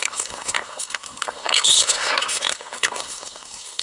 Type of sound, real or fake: fake